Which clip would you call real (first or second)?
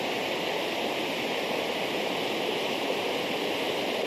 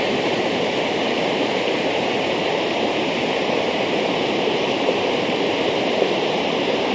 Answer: first